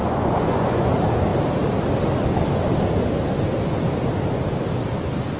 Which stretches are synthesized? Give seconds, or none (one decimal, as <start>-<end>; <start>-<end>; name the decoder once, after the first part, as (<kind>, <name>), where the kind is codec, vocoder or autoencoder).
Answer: 0.0-0.9 (vocoder, Vocos)